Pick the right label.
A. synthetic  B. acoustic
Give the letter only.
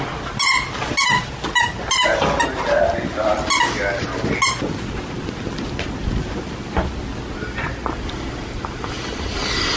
B